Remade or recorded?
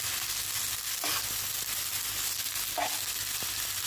recorded